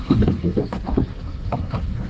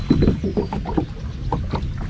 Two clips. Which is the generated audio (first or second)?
first